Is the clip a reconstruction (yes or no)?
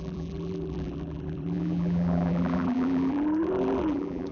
yes